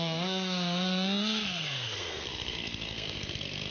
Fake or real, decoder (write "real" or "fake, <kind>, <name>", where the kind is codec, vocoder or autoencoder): fake, codec, SNAC